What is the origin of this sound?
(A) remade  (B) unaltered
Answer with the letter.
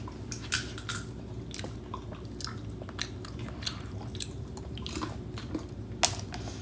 B